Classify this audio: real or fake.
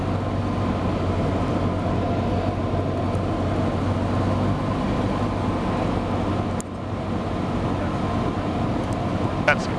real